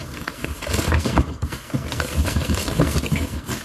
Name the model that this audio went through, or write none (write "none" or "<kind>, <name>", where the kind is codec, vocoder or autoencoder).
codec, SNAC